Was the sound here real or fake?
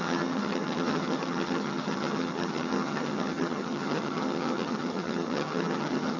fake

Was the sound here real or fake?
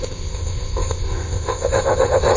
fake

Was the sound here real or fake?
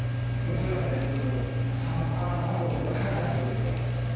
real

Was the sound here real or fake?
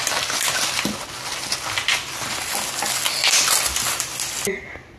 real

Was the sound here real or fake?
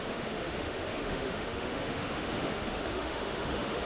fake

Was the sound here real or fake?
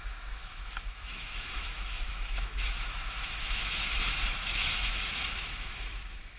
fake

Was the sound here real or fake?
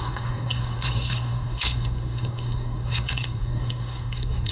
fake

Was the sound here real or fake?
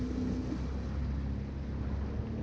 real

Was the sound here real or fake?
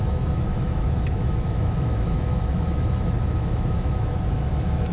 fake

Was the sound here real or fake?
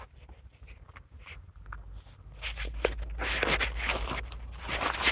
real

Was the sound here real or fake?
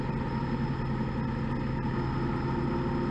real